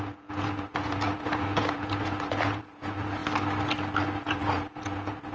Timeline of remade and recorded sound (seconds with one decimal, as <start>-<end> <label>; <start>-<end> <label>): 0.0-3.2 remade; 3.2-4.2 recorded; 4.2-5.3 remade